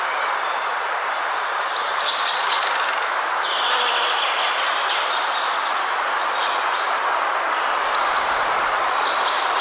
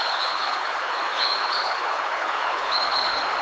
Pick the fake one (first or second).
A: second